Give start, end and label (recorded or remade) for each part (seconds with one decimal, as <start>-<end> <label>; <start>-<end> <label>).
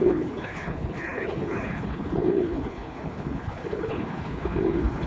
0.0-5.1 remade